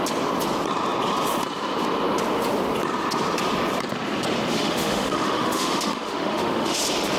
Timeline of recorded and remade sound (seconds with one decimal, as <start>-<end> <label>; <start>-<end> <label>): 0.0-4.5 recorded; 4.5-6.8 remade; 6.8-7.2 recorded